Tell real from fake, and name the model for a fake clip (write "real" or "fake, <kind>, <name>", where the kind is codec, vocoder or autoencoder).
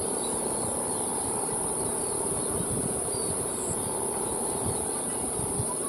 fake, vocoder, BigVGAN v2